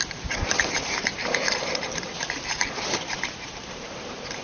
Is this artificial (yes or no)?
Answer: yes